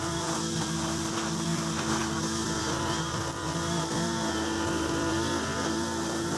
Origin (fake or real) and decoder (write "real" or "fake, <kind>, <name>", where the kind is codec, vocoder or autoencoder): fake, vocoder, BigVGAN v2